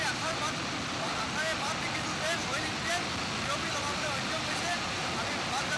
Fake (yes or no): no